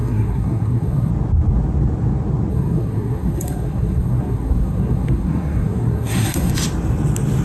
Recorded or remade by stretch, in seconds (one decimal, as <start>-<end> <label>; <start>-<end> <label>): 0.0-1.1 remade; 1.1-2.5 recorded; 2.5-6.5 remade; 6.5-7.4 recorded